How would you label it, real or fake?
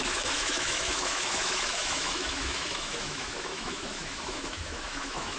fake